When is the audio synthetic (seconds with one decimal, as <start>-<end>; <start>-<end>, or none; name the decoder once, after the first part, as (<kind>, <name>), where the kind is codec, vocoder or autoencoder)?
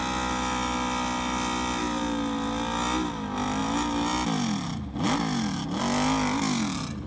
none